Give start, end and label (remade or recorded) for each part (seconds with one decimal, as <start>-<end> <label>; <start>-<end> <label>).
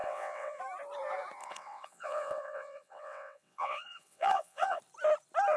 0.0-0.6 remade; 0.6-1.4 recorded; 1.4-4.8 remade; 4.8-5.6 recorded